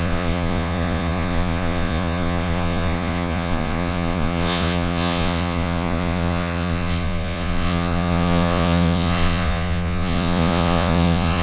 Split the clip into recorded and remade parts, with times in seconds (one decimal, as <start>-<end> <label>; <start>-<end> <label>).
0.0-11.4 remade